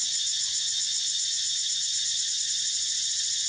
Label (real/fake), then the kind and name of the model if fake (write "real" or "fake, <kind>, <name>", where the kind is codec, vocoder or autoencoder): fake, vocoder, Vocos